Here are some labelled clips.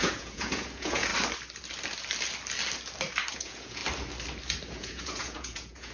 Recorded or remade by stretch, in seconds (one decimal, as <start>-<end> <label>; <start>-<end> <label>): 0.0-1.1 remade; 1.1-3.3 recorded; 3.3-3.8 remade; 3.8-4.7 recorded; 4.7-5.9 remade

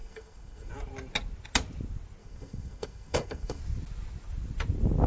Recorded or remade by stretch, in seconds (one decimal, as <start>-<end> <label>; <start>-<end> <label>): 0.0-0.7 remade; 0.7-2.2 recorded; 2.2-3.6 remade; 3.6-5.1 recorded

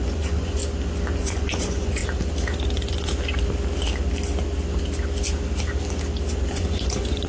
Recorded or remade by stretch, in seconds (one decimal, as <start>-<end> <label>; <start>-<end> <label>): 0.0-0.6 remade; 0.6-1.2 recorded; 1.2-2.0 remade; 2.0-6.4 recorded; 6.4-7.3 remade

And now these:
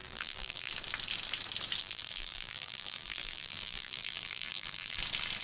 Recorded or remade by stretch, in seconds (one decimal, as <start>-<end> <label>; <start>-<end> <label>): 0.0-0.7 remade; 0.7-1.8 recorded; 1.8-5.0 remade; 5.0-5.4 recorded